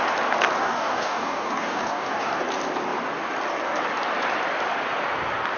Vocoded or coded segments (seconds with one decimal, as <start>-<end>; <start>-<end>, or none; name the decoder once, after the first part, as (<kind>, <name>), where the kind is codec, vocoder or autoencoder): 0.6-2.4 (codec, DAC)

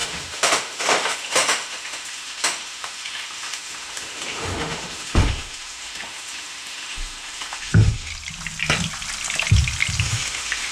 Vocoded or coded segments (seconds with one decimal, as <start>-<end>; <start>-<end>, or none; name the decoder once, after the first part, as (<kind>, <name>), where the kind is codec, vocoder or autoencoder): 0.0-8.1 (autoencoder, DAC-VAE); 10.0-10.7

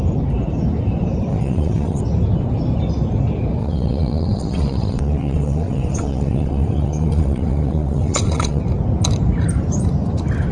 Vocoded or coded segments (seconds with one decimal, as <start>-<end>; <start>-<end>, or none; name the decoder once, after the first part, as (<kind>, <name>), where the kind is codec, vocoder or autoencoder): 1.3-2.0 (vocoder, WaveNeXt); 3.6-8.6

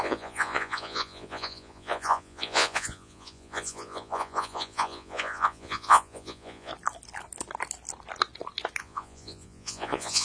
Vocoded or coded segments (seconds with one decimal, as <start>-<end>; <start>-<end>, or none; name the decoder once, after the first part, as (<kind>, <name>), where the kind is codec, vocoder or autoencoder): 0.0-6.7 (vocoder, Vocos); 8.8-10.2

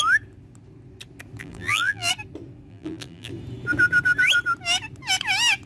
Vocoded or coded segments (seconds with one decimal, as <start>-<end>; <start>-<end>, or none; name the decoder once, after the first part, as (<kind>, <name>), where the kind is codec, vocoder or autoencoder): 1.4-2.1 (vocoder, BigVGAN v2); 2.7-3.3